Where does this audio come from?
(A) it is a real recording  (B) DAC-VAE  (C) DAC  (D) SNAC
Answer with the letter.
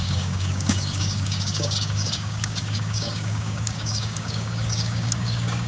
C